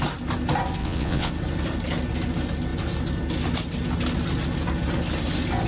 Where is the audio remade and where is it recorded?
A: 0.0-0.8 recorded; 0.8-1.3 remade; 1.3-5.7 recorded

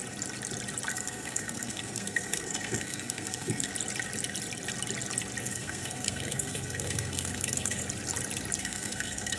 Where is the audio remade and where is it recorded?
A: 0.0-0.9 recorded; 0.9-3.7 remade; 3.7-5.4 recorded; 5.4-7.8 remade; 7.8-8.6 recorded; 8.6-9.4 remade

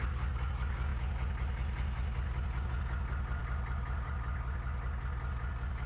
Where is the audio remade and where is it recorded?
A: 0.0-5.9 recorded

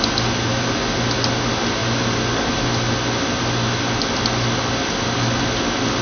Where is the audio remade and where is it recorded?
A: 0.0-6.0 recorded

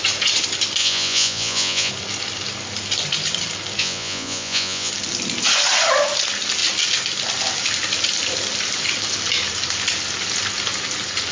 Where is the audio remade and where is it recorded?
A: 0.0-0.8 recorded; 0.8-1.9 remade; 1.9-3.8 recorded; 3.8-4.9 remade; 4.9-11.3 recorded

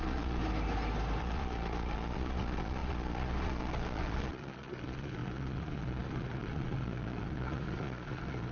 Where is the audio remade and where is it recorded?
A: 0.0-0.4 remade; 0.4-1.2 recorded; 1.2-8.5 remade